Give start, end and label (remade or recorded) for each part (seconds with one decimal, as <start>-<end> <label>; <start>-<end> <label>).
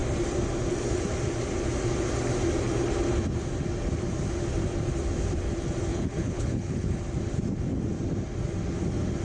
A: 0.0-5.9 recorded; 5.9-7.0 remade; 7.0-9.2 recorded